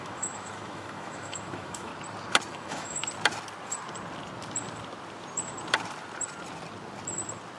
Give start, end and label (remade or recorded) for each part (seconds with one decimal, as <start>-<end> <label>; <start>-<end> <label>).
0.0-1.9 remade; 1.9-2.5 recorded; 2.5-3.0 remade; 3.0-7.6 recorded